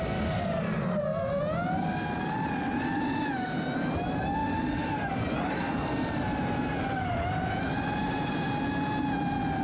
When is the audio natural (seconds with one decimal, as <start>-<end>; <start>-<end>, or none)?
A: 0.0-9.6